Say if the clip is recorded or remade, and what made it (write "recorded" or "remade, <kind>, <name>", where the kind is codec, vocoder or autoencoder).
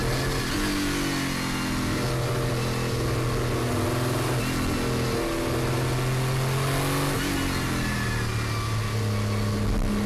recorded